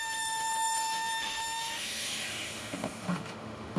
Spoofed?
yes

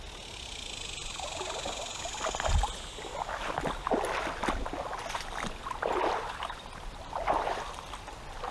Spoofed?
no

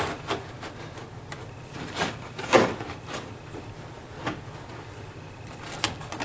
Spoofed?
no